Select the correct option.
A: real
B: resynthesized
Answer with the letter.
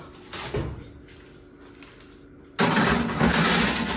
A